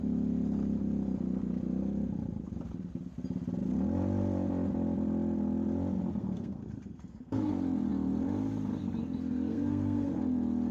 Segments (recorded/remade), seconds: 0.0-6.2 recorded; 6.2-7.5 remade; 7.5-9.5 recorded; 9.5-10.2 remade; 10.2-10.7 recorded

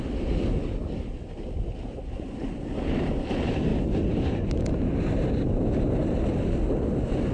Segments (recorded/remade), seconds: 0.0-7.3 recorded